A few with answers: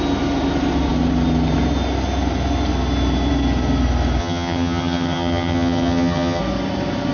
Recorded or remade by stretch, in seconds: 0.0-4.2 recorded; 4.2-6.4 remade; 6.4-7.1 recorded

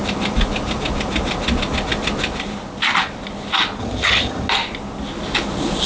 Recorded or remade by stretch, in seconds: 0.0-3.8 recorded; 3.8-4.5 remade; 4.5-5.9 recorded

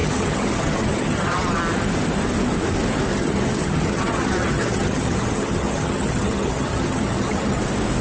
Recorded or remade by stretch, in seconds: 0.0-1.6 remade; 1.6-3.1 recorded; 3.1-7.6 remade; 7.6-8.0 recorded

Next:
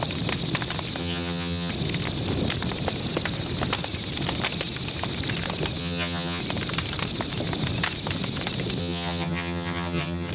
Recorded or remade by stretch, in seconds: 0.0-1.0 recorded; 1.0-1.7 remade; 1.7-5.8 recorded; 5.8-6.4 remade; 6.4-8.8 recorded; 8.8-10.3 remade